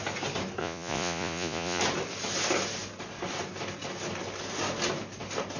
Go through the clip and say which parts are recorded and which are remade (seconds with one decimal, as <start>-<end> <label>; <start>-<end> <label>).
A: 0.0-0.6 recorded; 0.6-1.8 remade; 1.8-5.6 recorded